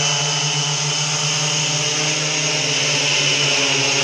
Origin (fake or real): real